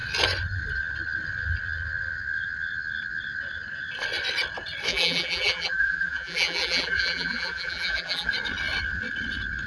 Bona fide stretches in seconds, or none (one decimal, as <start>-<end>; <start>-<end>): 0.0-4.9; 8.3-9.7